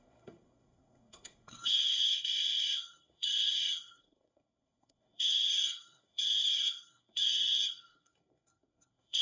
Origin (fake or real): fake